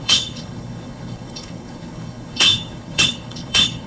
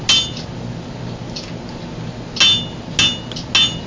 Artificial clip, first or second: first